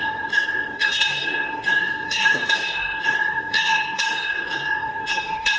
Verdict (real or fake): fake